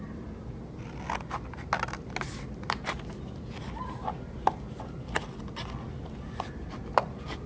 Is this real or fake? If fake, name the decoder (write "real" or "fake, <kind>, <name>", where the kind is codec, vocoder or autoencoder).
real